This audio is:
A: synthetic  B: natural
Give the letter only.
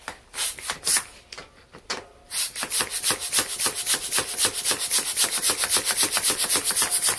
A